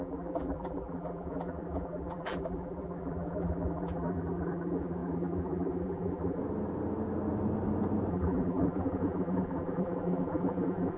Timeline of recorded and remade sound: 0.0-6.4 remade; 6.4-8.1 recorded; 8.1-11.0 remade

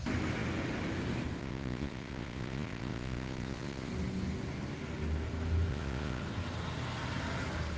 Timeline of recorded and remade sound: 0.0-1.4 recorded; 1.4-3.9 remade; 3.9-5.7 recorded; 5.7-6.2 remade; 6.2-7.8 recorded

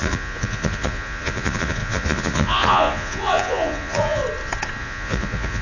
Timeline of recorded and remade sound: 0.0-4.2 remade; 4.2-4.8 recorded; 4.8-5.6 remade